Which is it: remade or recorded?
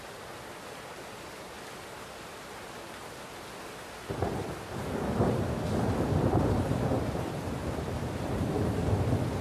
recorded